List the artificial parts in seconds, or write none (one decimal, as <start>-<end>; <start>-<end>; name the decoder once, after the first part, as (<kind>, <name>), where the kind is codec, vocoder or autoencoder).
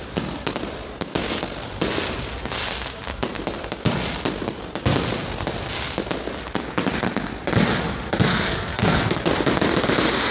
8.3-9.3 (codec, SNAC)